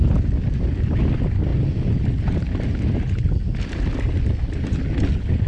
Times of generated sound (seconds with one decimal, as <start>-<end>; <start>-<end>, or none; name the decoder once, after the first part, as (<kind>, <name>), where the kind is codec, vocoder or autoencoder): none